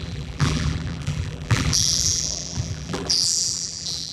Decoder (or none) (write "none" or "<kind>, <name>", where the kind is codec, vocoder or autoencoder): vocoder, BigVGAN v2